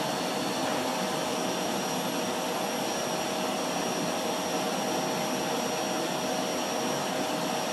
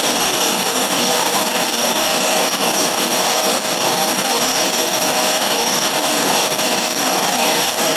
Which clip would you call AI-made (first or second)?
second